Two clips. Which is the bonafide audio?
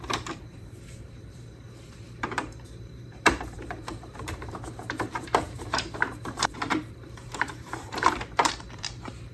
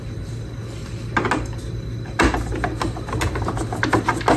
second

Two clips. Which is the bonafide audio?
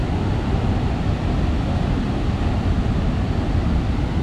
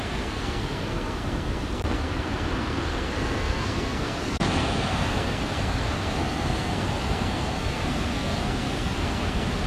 first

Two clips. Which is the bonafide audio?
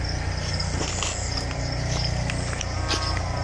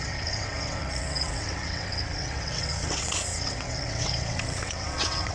first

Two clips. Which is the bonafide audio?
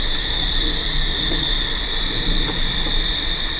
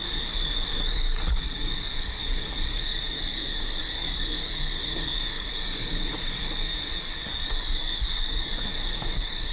first